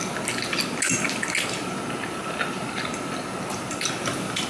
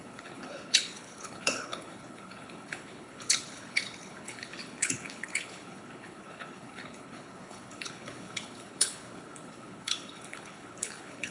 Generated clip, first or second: second